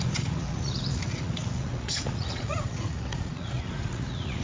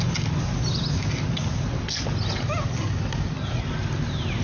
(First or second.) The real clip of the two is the second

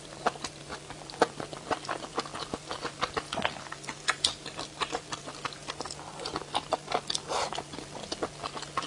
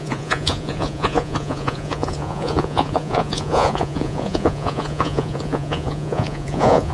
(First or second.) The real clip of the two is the first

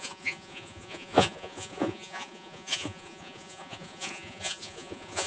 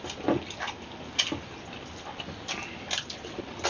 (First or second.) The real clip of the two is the second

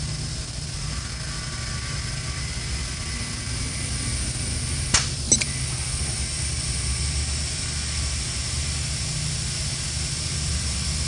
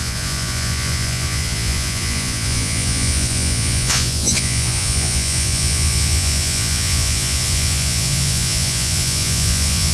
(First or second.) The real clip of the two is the first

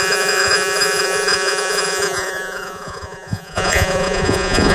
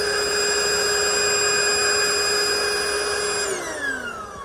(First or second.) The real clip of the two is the second